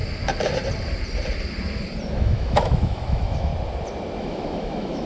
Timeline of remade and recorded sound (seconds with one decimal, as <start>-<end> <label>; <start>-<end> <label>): 0.0-2.1 recorded; 2.1-3.5 remade; 3.5-4.2 recorded; 4.2-5.1 remade